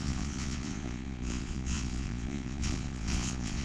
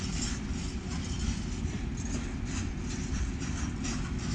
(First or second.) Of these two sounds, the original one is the second